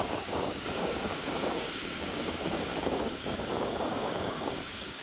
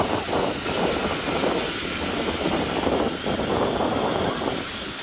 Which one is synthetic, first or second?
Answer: first